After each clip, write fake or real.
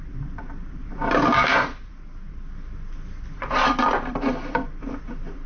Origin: fake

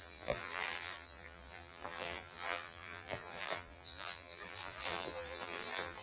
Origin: fake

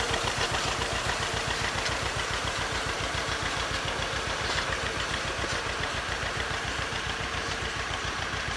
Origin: fake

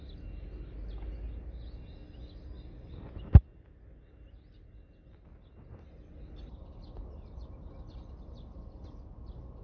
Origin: real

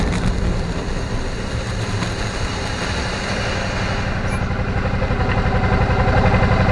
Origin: real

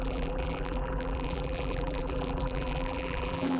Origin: fake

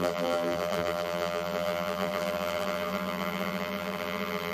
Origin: fake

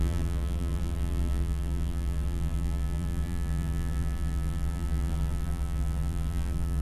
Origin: fake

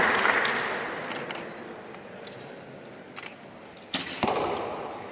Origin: real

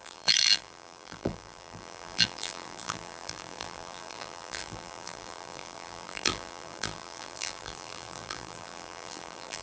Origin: fake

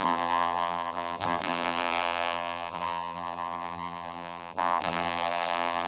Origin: fake